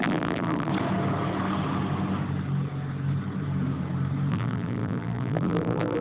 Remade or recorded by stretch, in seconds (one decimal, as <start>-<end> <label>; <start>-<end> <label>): 0.0-0.7 remade; 0.7-4.3 recorded; 4.3-6.0 remade